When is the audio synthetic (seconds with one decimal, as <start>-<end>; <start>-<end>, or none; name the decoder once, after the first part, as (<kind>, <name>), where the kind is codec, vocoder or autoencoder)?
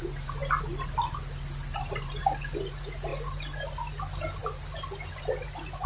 3.1-3.9 (vocoder, BigVGAN v2)